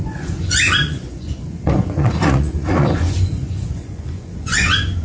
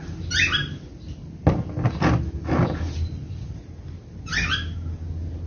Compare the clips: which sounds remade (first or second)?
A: first